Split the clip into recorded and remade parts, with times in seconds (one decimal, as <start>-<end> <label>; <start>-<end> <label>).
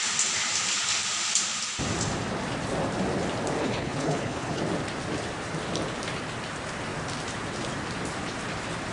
0.0-3.6 recorded; 3.6-4.6 remade; 4.6-8.9 recorded